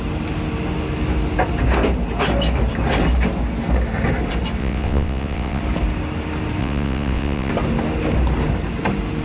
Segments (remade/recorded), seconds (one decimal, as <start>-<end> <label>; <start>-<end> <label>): 0.0-4.6 recorded; 4.6-5.6 remade; 5.6-6.6 recorded; 6.6-7.5 remade; 7.5-9.2 recorded